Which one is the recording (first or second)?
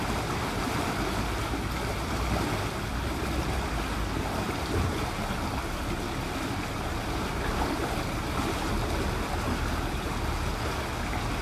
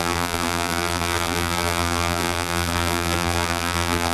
first